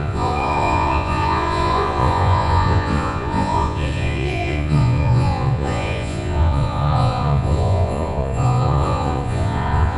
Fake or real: fake